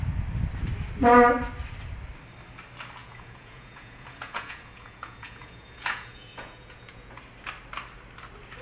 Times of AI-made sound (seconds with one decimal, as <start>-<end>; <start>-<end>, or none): 3.0-7.2